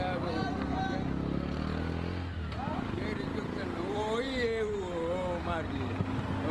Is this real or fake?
real